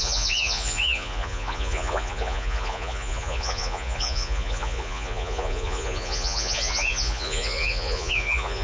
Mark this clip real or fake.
fake